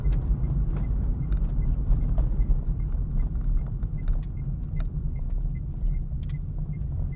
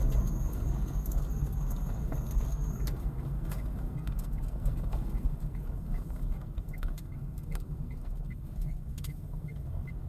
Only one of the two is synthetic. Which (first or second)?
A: second